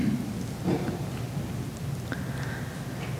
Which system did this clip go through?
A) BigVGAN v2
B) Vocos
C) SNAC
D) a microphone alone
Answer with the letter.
D